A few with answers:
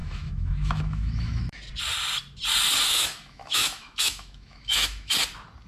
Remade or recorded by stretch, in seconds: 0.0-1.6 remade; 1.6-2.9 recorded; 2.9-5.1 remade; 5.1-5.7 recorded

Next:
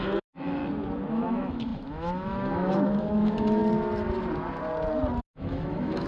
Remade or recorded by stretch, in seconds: 0.0-0.6 remade; 0.6-1.1 recorded; 1.1-3.6 remade; 3.6-5.2 recorded; 5.2-6.1 remade

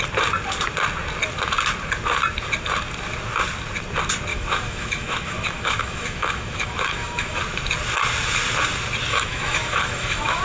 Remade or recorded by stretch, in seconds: 0.0-4.3 recorded; 4.3-7.4 remade; 7.4-9.1 recorded; 9.1-10.4 remade

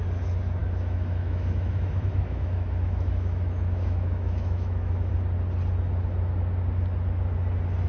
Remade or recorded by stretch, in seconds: 0.0-0.6 recorded; 0.6-5.1 remade; 5.1-7.9 recorded

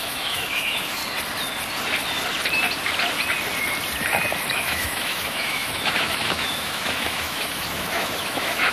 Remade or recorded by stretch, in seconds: 0.0-1.0 remade; 1.0-4.5 recorded; 4.5-8.7 remade

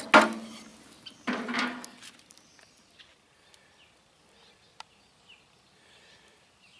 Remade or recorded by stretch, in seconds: 0.0-6.8 recorded